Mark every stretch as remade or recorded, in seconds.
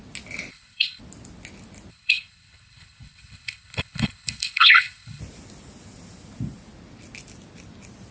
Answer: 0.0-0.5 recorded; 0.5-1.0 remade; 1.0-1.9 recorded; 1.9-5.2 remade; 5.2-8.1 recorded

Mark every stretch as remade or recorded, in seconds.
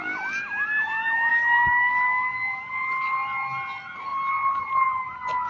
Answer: 0.0-5.5 recorded